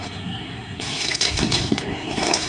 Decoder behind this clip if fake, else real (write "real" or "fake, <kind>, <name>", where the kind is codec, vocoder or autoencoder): fake, codec, SNAC